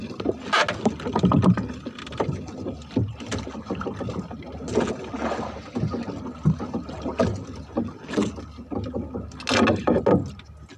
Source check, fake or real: real